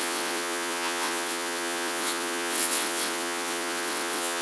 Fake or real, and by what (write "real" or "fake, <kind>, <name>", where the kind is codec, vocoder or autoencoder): fake, vocoder, WaveNeXt